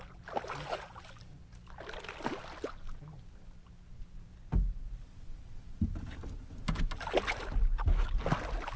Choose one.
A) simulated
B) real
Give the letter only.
B